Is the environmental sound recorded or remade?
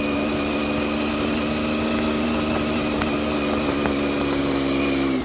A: recorded